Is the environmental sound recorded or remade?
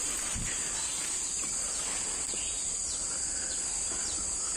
recorded